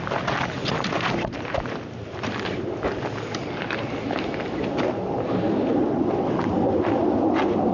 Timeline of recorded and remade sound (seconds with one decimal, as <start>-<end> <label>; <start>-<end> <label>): 0.0-5.8 recorded; 5.8-6.5 remade; 6.5-7.7 recorded